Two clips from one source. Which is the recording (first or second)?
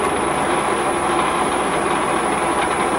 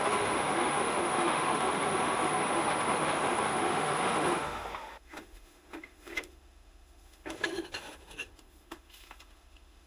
first